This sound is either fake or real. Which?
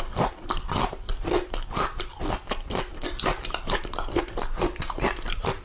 real